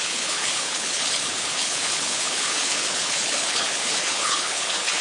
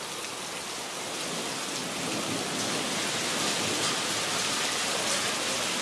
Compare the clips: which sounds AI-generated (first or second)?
first